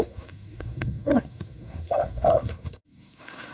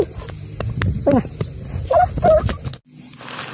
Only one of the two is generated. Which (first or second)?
first